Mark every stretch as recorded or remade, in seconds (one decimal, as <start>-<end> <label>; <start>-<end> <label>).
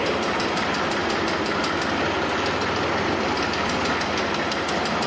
0.0-5.1 recorded